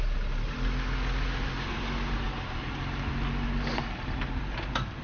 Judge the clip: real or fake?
real